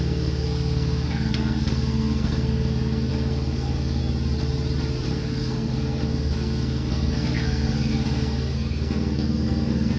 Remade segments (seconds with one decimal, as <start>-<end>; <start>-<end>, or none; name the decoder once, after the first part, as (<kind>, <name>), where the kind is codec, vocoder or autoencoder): 0.0-4.0 (codec, SNAC); 5.1-10.0